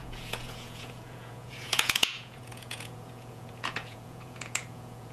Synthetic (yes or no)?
yes